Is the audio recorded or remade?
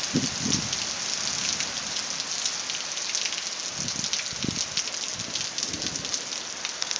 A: recorded